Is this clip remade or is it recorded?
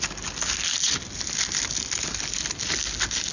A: recorded